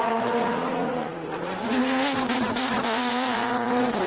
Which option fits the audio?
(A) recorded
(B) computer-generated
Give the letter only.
B